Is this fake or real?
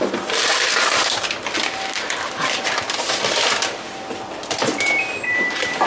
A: fake